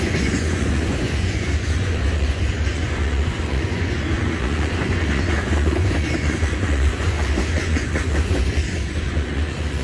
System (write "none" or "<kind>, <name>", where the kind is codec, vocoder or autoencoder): vocoder, Vocos